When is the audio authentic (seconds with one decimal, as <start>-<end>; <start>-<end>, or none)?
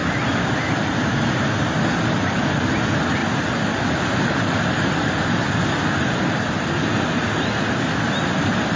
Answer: 0.0-8.8